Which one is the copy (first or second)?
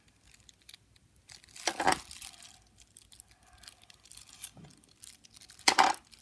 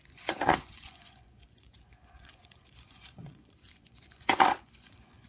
second